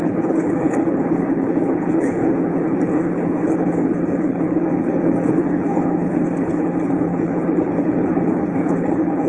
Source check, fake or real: fake